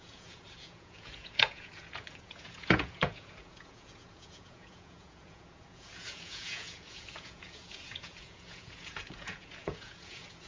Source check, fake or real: fake